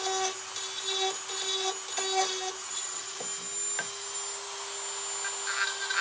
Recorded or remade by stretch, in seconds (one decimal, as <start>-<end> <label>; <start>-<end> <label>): 0.0-2.6 recorded; 2.6-3.2 remade; 3.2-6.0 recorded